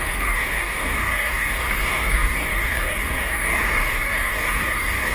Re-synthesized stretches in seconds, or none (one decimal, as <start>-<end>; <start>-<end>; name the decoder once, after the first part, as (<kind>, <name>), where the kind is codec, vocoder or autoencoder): 0.0-5.1 (codec, DAC)